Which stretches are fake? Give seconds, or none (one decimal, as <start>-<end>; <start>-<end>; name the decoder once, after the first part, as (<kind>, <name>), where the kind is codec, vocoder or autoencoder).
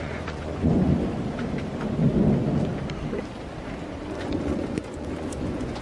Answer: 0.0-0.9 (vocoder, Vocos); 4.2-5.8